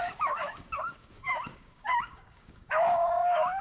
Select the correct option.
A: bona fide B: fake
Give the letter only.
B